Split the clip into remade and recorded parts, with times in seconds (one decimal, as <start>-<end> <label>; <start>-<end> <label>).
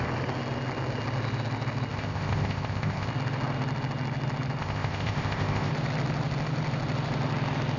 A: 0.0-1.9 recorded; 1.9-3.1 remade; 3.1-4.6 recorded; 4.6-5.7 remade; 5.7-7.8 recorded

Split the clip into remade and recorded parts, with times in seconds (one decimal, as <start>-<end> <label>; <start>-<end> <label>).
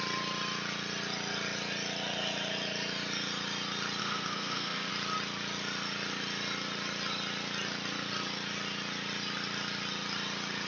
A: 0.0-4.0 recorded; 4.0-4.9 remade; 4.9-10.7 recorded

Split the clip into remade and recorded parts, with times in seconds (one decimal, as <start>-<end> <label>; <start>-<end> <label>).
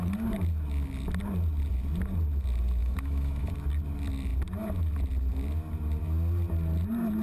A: 0.0-2.8 recorded; 2.8-3.5 remade; 3.5-7.2 recorded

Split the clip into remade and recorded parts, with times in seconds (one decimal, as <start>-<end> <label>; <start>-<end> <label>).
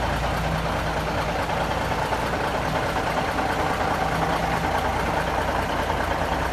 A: 0.0-4.9 recorded; 4.9-5.7 remade; 5.7-6.5 recorded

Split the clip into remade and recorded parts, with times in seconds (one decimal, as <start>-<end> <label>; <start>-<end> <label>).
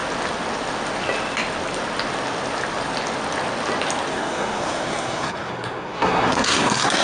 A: 0.0-4.1 recorded; 4.1-7.0 remade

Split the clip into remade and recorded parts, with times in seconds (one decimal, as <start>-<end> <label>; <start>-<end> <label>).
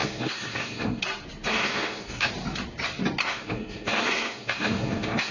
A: 0.0-1.0 remade; 1.0-1.5 recorded; 1.5-2.3 remade; 2.3-3.2 recorded; 3.2-5.3 remade